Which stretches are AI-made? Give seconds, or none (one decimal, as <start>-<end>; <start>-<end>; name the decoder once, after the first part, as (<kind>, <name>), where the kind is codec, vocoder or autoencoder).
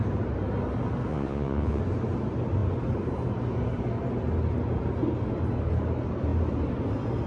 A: 1.1-1.8 (vocoder, Vocos)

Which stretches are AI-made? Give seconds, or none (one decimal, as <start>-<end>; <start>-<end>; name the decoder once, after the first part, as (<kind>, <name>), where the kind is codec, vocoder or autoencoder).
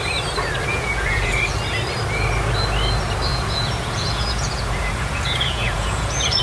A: 0.7-1.4 (vocoder, Vocos); 3.3-6.4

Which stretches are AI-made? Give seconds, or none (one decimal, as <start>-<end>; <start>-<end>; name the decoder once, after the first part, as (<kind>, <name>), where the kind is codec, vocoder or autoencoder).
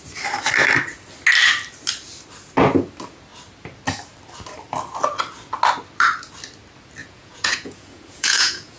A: 7.0-8.8 (vocoder, Vocos)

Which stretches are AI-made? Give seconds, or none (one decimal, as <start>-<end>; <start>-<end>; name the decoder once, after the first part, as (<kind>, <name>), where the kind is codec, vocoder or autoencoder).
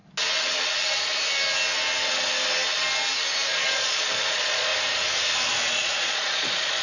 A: 3.5-4.7 (vocoder, Vocos); 5.7-6.8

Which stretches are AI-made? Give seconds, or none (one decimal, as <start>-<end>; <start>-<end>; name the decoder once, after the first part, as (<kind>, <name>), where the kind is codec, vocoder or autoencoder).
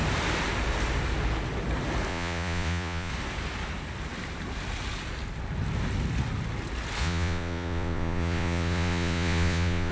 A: 2.1-3.1 (vocoder, Vocos); 7.0-9.9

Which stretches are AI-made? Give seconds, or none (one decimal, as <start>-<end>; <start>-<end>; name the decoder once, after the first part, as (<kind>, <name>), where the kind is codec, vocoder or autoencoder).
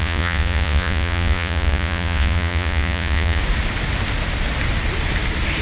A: 0.0-3.4 (vocoder, Vocos)